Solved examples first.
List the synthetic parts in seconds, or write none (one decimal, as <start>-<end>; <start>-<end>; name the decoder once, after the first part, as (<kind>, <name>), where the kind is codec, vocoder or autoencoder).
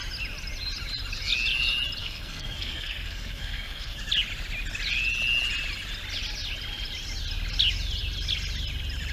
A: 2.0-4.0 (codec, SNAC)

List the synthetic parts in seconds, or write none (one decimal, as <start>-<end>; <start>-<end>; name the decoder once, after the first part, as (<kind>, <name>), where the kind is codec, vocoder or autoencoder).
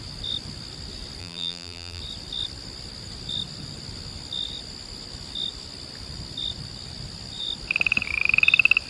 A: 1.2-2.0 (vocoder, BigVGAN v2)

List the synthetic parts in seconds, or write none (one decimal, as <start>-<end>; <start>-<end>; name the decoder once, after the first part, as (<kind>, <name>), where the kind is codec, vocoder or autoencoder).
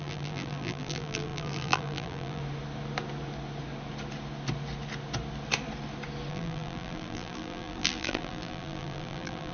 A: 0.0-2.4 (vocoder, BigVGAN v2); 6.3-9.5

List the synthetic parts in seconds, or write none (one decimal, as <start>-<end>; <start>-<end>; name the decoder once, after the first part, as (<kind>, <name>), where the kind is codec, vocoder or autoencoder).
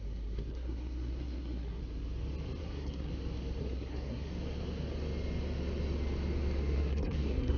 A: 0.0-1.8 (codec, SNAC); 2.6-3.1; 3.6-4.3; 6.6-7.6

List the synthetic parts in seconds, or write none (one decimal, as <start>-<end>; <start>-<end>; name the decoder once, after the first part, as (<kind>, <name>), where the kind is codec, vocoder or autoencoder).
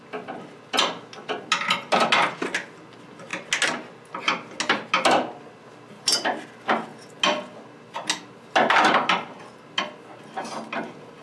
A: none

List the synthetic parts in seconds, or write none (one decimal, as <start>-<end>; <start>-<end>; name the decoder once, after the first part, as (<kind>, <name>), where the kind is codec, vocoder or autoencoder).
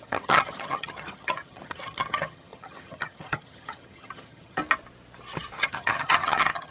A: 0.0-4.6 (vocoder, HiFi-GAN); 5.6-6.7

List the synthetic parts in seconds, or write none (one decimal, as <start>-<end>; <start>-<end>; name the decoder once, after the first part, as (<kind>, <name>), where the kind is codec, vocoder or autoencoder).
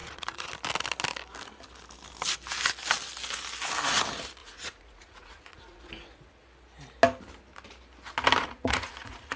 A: 0.0-0.5 (vocoder, Vocos); 4.4-5.8; 8.4-9.4